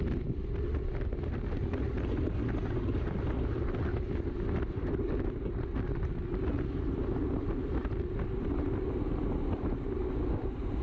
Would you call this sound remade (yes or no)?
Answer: no